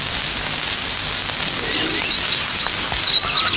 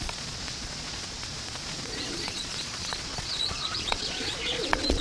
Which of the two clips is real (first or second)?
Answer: first